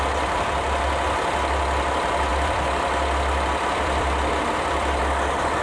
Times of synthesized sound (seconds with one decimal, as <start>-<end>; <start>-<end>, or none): 2.3-5.0